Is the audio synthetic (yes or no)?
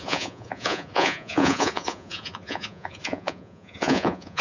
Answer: yes